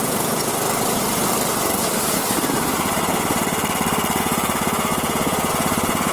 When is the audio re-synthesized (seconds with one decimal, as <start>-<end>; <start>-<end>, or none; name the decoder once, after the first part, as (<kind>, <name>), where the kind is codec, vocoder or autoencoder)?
0.0-0.5 (vocoder, Vocos); 4.2-6.1